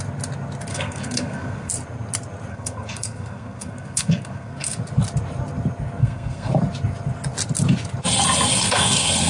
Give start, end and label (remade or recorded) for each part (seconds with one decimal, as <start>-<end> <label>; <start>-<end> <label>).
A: 0.0-0.7 recorded; 0.7-1.7 remade; 1.7-2.5 recorded; 2.5-4.8 remade; 4.8-6.0 recorded; 6.0-6.5 remade; 6.5-8.5 recorded; 8.5-9.3 remade